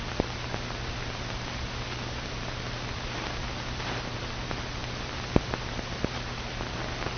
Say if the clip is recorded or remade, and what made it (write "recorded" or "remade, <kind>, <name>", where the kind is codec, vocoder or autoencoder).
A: recorded